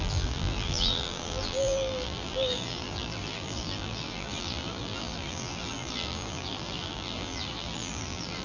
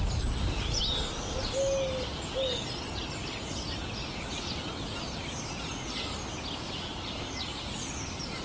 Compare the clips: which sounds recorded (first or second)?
second